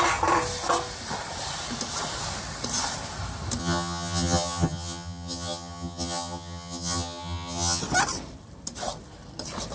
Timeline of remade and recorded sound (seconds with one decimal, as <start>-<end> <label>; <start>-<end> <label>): 0.0-3.6 recorded; 3.6-7.8 remade; 7.8-9.7 recorded

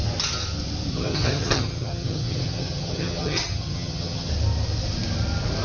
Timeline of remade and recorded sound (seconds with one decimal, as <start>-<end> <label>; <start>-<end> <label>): 0.0-0.9 recorded; 0.9-4.3 remade; 4.3-5.6 recorded

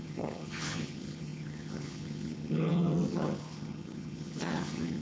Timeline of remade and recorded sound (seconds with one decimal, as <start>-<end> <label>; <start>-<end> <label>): 0.0-5.0 remade